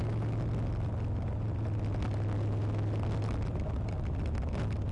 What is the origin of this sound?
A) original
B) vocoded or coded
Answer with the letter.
A